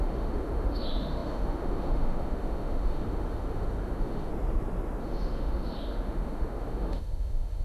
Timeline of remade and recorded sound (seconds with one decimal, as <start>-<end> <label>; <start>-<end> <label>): 0.0-4.3 remade; 4.3-5.0 recorded; 5.0-7.6 remade

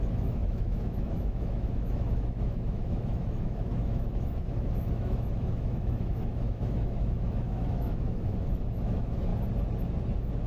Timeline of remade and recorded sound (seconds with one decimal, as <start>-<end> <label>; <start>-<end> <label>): 0.0-9.3 remade; 9.3-10.5 recorded

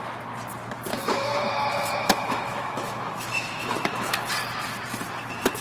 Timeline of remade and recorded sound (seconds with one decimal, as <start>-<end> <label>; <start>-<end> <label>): 0.0-0.9 recorded; 0.9-4.3 remade; 4.3-5.6 recorded